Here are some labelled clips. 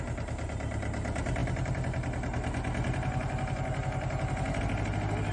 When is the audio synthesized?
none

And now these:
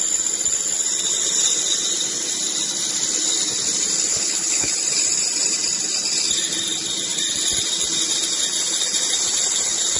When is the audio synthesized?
4.1-4.7 (codec, HILCodec)

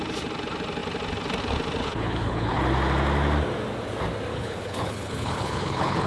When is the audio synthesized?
1.8-2.6 (codec, HILCodec); 4.3-6.1

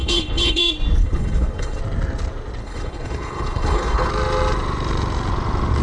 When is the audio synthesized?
0.0-0.6 (codec, HILCodec); 1.0-1.8; 2.6-4.1

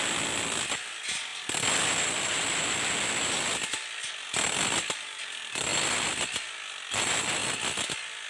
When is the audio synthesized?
none